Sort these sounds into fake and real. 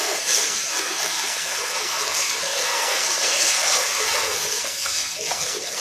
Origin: fake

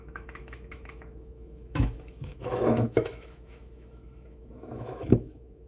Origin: fake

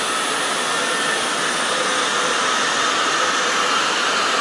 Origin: real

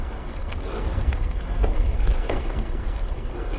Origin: fake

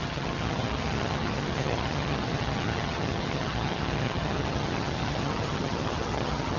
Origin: fake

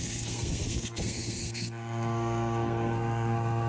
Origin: fake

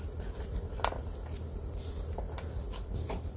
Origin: real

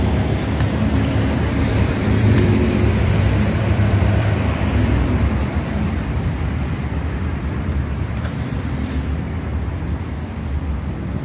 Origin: fake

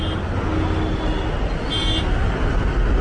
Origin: real